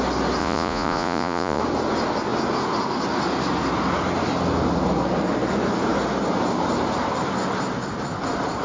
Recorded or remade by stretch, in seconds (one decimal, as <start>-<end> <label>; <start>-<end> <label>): 0.0-0.4 recorded; 0.4-1.6 remade; 1.6-8.6 recorded